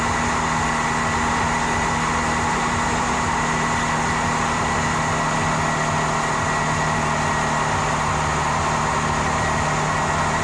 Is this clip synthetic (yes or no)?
no